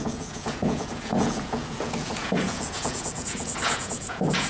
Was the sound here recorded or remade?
remade